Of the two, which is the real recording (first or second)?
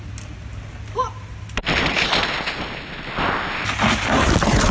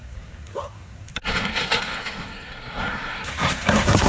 first